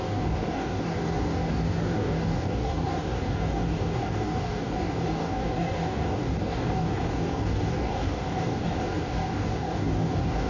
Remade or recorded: remade